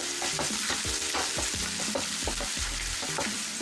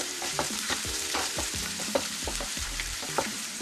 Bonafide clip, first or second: first